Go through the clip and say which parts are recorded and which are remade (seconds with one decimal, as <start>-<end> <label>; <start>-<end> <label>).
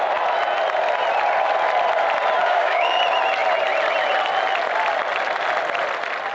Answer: 0.0-2.4 recorded; 2.4-3.0 remade; 3.0-6.3 recorded